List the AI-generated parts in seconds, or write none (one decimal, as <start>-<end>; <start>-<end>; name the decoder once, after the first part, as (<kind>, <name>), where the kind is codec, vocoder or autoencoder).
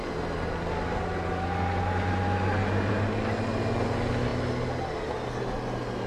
none